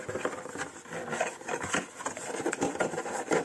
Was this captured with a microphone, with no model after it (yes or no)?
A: yes